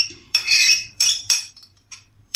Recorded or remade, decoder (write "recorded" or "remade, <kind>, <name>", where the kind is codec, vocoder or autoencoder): remade, vocoder, BigVGAN v2